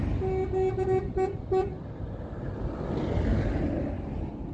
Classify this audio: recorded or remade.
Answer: recorded